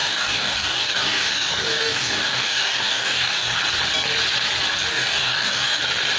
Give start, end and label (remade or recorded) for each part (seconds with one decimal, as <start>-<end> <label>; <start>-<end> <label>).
0.0-3.6 remade; 3.6-4.9 recorded; 4.9-5.8 remade; 5.8-6.2 recorded